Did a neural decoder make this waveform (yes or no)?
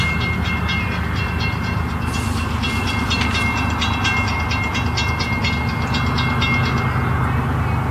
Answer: no